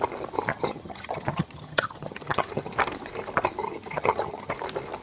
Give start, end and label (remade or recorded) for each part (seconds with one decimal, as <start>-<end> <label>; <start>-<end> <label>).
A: 0.0-0.5 recorded; 0.5-2.7 remade; 2.7-3.6 recorded; 3.6-4.5 remade; 4.5-5.0 recorded